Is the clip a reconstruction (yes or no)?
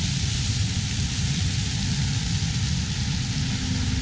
no